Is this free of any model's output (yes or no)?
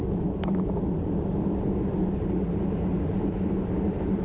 yes